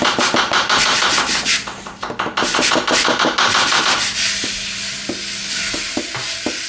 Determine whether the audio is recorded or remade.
recorded